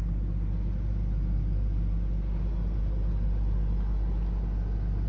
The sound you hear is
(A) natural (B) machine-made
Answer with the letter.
A